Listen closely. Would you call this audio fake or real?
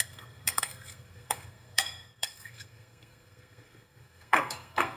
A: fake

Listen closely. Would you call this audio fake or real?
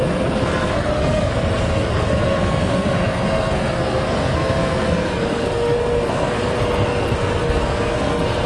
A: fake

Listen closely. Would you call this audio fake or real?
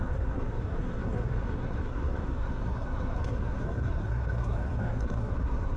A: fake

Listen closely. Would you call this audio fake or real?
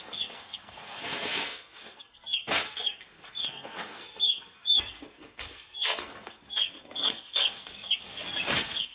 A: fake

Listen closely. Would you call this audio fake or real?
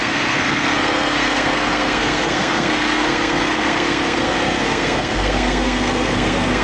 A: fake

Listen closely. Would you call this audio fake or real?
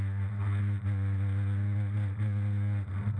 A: real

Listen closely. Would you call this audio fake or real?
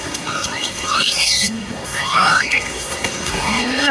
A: fake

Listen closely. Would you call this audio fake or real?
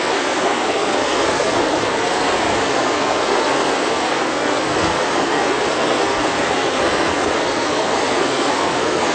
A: fake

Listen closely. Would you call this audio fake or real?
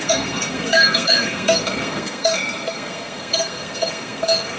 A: fake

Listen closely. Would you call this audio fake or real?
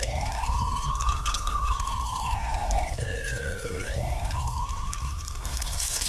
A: fake